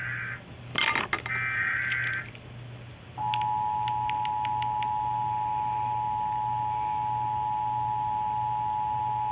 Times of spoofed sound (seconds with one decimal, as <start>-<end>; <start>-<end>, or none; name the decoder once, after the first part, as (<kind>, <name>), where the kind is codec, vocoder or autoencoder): none

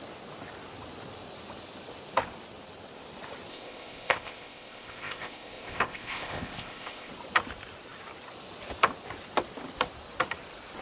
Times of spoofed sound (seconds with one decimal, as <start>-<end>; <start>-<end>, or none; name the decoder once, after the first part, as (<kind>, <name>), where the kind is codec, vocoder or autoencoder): 3.5-7.1 (codec, ZipCodec)

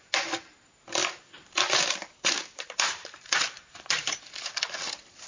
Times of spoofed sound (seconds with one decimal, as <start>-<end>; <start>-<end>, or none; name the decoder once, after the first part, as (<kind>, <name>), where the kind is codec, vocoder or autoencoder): 1.0-4.2 (vocoder, BigVGAN v2)